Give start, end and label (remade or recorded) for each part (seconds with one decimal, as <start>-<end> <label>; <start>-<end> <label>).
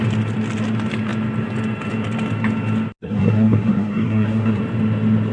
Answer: 0.0-3.0 recorded; 3.0-4.6 remade; 4.6-5.3 recorded